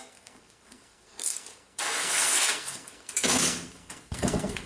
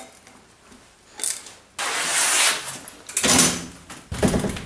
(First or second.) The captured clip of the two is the second